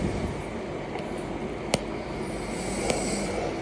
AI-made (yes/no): no